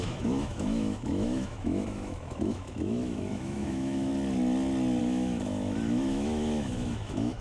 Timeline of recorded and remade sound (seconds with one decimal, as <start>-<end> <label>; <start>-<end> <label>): 0.0-4.1 remade; 4.1-5.0 recorded; 5.0-7.4 remade